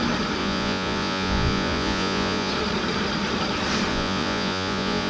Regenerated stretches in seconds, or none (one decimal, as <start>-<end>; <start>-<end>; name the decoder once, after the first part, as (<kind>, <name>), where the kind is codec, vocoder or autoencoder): 0.4-2.5 (vocoder, Vocos); 3.9-5.1